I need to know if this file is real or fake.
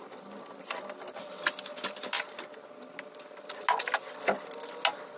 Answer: real